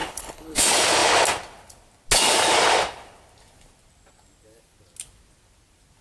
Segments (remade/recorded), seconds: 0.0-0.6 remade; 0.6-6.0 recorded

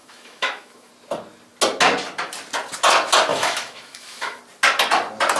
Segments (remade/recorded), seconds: 0.0-0.9 remade; 0.9-3.3 recorded; 3.3-4.4 remade; 4.4-5.4 recorded